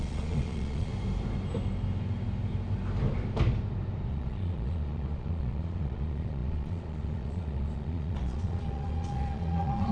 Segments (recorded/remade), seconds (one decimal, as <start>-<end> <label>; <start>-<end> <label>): 0.0-0.9 remade; 0.9-4.1 recorded; 4.1-9.9 remade